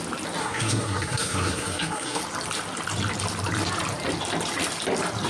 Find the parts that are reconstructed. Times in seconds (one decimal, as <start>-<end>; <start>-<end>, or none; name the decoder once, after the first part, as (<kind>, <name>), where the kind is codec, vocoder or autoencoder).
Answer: 0.4-2.2 (codec, SNAC)